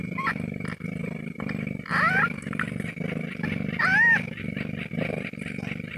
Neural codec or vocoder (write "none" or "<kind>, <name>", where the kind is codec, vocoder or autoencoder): none